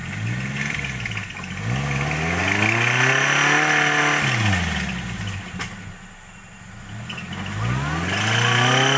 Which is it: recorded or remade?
recorded